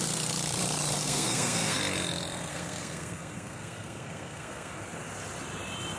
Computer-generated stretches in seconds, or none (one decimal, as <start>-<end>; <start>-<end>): 1.0-1.8; 2.5-4.7

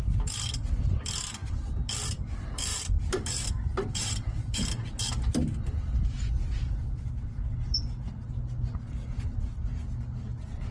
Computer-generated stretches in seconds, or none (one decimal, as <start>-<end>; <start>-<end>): 2.7-4.6

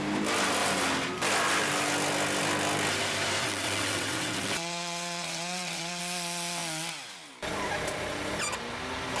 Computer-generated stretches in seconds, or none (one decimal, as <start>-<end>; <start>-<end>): 3.4-6.0